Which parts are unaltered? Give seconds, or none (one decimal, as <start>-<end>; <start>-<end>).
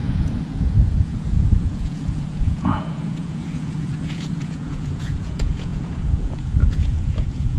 none